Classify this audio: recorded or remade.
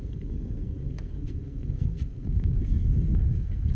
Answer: remade